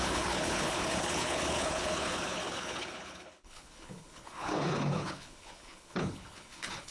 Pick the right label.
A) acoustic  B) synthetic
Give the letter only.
B